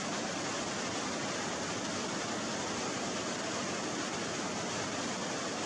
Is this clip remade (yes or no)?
no